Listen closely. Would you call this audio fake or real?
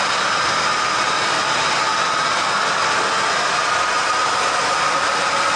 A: real